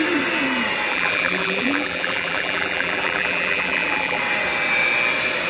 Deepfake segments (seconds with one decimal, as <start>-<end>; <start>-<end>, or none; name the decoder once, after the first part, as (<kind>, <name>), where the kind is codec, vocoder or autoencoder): 0.9-4.2 (vocoder, BigVGAN v2)